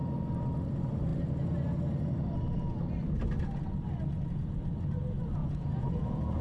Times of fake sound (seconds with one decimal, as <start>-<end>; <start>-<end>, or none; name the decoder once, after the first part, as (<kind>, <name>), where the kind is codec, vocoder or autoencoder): 5.4-6.4 (vocoder, Vocos)